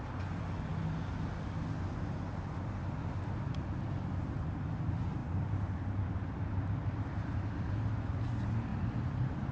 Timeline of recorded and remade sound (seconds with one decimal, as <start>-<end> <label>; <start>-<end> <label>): 0.0-5.2 recorded; 5.2-7.7 remade; 7.7-8.7 recorded; 8.7-9.5 remade